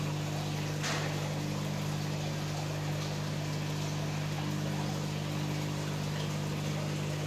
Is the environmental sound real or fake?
real